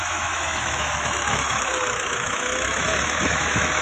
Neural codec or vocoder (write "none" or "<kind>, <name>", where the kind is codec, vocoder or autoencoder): autoencoder, DAC-VAE